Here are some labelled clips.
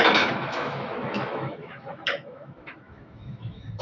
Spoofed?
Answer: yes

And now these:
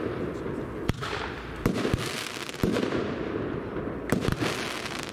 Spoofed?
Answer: no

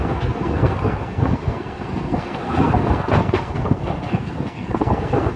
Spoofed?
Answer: yes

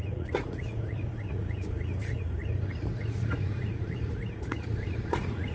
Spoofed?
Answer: yes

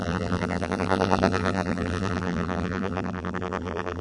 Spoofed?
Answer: yes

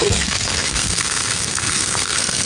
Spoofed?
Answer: yes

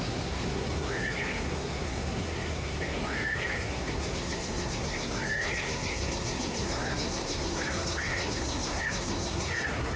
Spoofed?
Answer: yes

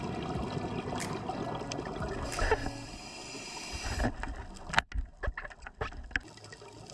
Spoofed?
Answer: no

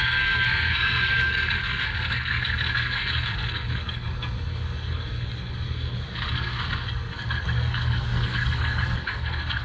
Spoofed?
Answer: yes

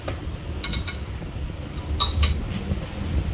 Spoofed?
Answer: no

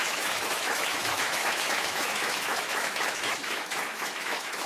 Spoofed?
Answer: yes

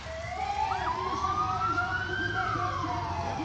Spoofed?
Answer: no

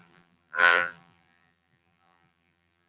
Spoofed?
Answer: yes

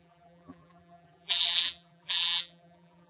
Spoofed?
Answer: yes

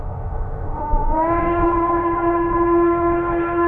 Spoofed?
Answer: yes